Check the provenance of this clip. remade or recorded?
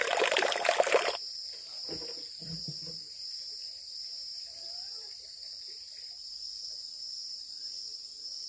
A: recorded